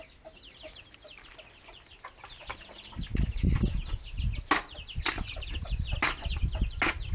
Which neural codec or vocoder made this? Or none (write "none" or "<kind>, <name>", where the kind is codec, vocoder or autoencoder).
none